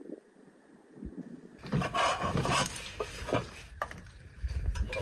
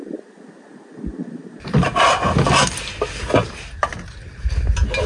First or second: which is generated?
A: first